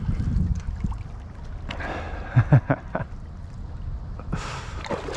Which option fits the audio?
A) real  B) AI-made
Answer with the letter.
A